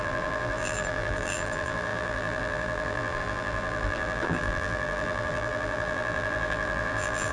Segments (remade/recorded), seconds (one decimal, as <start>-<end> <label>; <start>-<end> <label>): 0.0-7.3 remade